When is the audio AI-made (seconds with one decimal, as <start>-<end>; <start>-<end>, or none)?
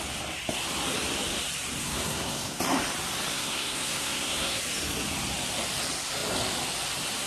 1.8-2.6; 3.3-4.6